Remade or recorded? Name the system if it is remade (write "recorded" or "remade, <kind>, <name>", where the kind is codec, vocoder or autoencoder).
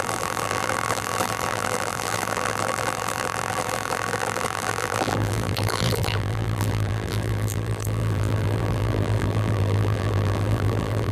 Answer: remade, vocoder, BigVGAN v2